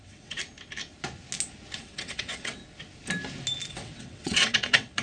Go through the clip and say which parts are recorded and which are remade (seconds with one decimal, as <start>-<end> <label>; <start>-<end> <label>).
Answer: 0.0-0.4 remade; 0.4-1.8 recorded; 1.8-2.6 remade; 2.6-3.7 recorded; 3.7-5.0 remade